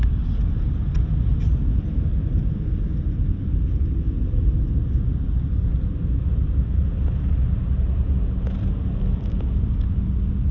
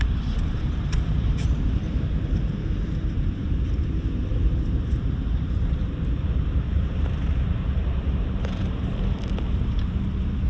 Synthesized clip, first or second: second